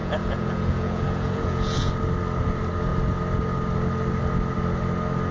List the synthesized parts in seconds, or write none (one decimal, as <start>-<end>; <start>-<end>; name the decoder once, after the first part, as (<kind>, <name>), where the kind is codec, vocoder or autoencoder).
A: 0.0-1.9 (vocoder, Vocos)